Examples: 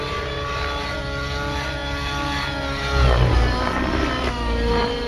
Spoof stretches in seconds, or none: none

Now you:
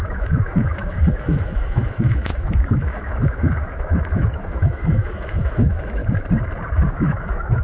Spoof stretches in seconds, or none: 0.0-6.0 (autoencoder, DAC-VAE); 6.9-7.6

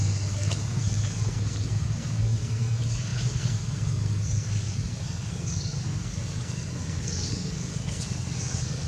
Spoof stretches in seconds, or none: 0.0-8.9 (codec, SNAC)

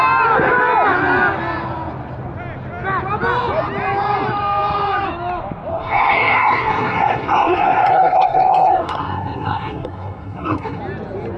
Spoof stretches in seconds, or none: 5.7-10.8 (codec, SNAC)

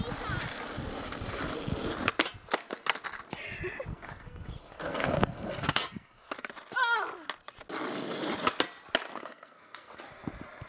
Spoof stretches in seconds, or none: 3.9-6.3 (codec, SNAC); 9.1-10.0

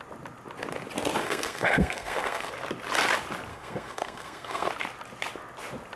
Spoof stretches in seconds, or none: 1.2-2.5 (codec, SNAC); 3.5-4.7